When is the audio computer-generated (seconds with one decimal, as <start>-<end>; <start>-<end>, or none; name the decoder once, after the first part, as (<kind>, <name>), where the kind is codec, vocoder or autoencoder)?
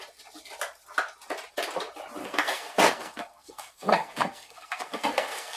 2.2-5.6 (codec, SNAC)